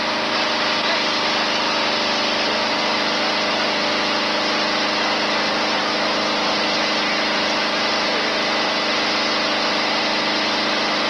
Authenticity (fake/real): real